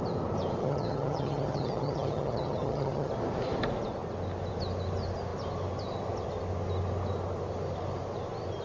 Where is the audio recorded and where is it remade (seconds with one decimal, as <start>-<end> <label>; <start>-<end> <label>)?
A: 0.0-0.6 recorded; 0.6-3.1 remade; 3.1-8.6 recorded